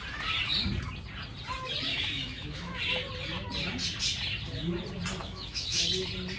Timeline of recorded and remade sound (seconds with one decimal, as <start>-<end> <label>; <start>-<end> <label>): 0.0-1.9 recorded; 1.9-2.8 remade; 2.8-5.2 recorded; 5.2-5.8 remade; 5.8-6.4 recorded